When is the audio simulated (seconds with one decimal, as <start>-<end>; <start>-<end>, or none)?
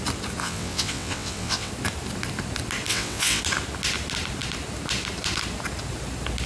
0.4-1.7; 2.9-3.4